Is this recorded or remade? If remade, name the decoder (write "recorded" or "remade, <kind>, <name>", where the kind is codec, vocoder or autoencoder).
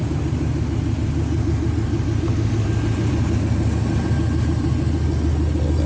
recorded